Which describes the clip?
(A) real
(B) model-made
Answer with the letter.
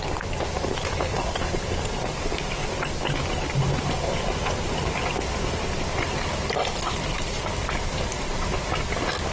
A